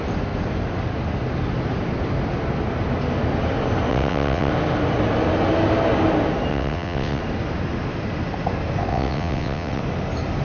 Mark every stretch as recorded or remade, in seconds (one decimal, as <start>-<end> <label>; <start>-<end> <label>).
0.0-3.9 recorded; 3.9-4.5 remade; 4.5-6.5 recorded; 6.5-7.2 remade; 7.2-8.9 recorded; 8.9-9.8 remade; 9.8-10.4 recorded